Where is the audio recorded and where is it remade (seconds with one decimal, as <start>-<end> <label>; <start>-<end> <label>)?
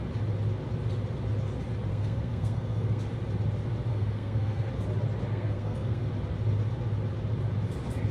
0.0-1.9 recorded; 1.9-3.0 remade; 3.0-3.9 recorded; 3.9-4.7 remade; 4.7-5.3 recorded; 5.3-6.1 remade; 6.1-8.1 recorded